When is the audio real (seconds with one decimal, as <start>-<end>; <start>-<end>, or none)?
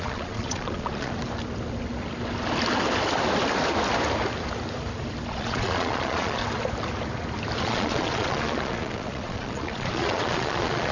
1.1-5.3; 6.4-7.6